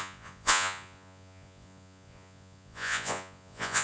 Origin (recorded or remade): remade